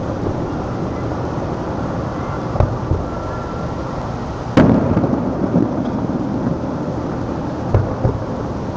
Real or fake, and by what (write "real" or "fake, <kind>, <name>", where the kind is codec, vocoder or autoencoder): real